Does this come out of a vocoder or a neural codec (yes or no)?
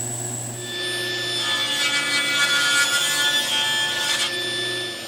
no